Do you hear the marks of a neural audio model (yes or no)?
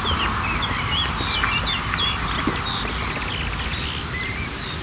no